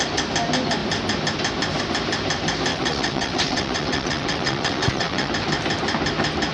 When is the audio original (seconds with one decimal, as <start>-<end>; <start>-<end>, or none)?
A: 0.0-2.7; 5.3-6.5

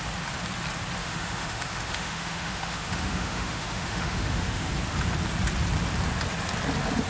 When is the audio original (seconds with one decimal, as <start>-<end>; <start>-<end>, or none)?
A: 0.0-1.0; 4.7-7.1

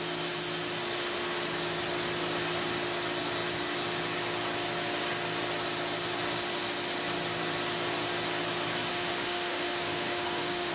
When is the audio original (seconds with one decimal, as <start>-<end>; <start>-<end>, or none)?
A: 0.0-8.9

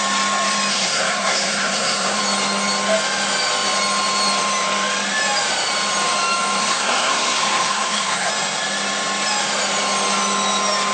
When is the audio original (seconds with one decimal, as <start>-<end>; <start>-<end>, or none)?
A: 0.0-0.7; 2.2-6.6; 8.3-10.9

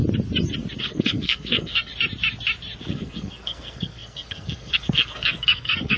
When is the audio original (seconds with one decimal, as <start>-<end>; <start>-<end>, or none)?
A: 0.0-0.8; 1.9-2.8

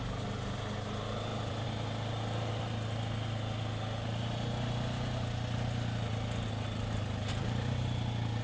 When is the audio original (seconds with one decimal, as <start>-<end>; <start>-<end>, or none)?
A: 0.0-1.3; 2.6-8.4

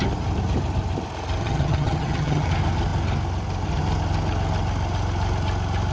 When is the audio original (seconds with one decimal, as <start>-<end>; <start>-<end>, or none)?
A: 0.0-1.4; 2.5-5.9

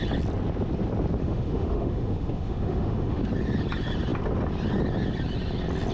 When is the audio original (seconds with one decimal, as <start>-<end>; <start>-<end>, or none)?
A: 0.0-1.2; 3.2-5.9